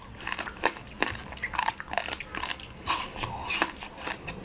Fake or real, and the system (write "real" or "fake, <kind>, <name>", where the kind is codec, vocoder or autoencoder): real